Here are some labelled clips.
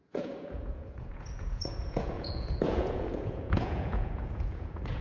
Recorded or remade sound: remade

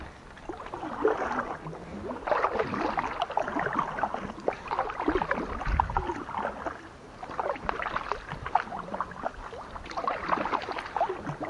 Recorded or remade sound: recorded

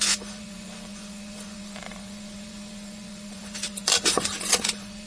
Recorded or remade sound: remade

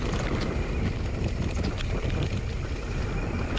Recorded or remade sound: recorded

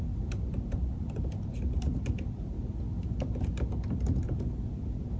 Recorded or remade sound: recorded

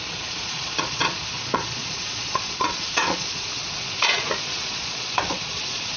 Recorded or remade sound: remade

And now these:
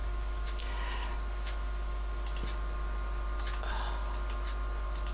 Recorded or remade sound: recorded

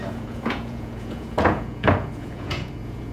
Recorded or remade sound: remade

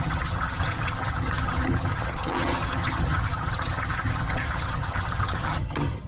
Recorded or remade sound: remade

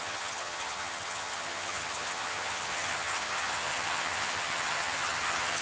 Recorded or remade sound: remade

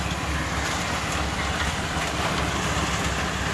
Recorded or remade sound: recorded